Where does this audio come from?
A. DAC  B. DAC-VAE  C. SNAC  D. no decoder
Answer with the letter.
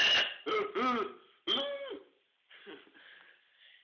D